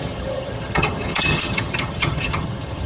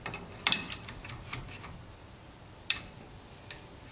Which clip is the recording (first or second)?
second